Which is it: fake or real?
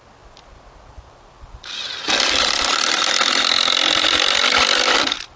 real